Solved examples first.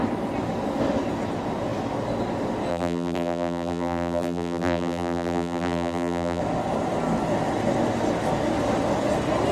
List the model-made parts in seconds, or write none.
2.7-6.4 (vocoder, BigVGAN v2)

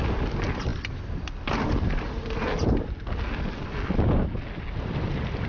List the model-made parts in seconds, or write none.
none

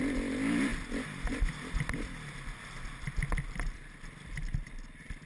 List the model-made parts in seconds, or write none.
0.7-3.9 (vocoder, BigVGAN v2)

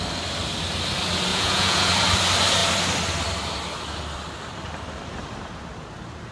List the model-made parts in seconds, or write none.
1.3-1.9 (vocoder, Vocos)

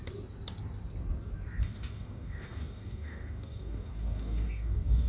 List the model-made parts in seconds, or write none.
1.6-5.1 (codec, DAC)

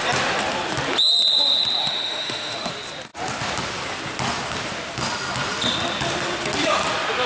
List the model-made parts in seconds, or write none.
1.8-2.7 (autoencoder, DAC-VAE)